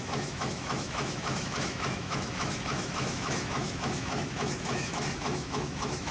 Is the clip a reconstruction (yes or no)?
yes